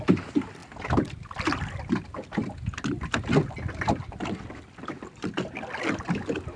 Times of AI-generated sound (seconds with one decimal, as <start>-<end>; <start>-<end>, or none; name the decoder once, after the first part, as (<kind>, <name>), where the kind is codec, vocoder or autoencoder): none